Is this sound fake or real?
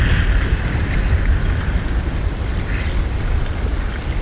real